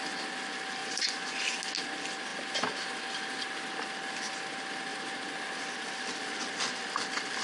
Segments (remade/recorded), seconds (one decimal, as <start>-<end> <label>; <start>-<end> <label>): 0.0-0.8 recorded; 0.8-1.4 remade; 1.4-7.4 recorded